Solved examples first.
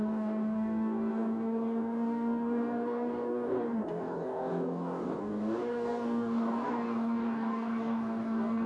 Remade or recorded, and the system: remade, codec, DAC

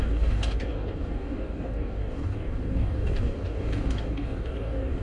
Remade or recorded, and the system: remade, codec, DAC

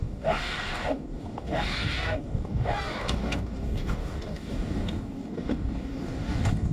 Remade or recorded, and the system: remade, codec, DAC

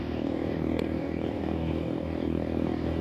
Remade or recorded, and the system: remade, codec, DAC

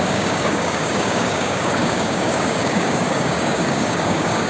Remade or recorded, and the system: remade, codec, DAC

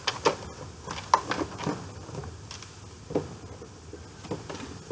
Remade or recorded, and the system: recorded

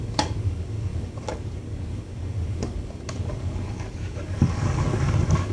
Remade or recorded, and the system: remade, codec, DAC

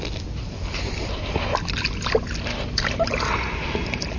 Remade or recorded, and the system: recorded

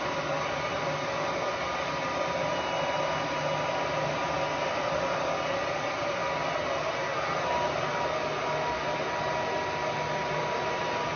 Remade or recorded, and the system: recorded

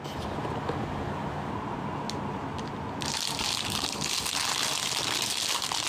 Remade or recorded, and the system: recorded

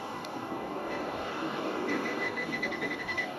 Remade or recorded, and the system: remade, codec, DAC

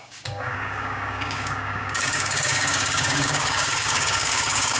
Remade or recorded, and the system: remade, codec, DAC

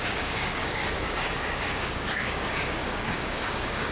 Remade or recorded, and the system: remade, codec, DAC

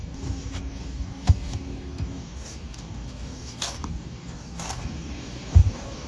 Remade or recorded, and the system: remade, codec, DAC